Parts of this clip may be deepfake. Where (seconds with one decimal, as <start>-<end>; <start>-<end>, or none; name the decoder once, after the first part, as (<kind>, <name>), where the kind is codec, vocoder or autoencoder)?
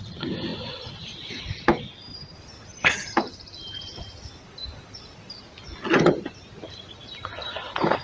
2.7-5.4 (vocoder, BigVGAN v2); 7.0-8.0